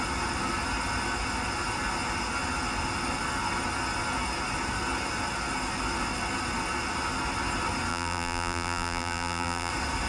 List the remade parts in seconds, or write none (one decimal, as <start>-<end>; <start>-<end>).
7.9-9.7